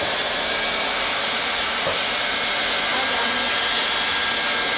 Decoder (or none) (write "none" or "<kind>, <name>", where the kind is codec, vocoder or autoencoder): none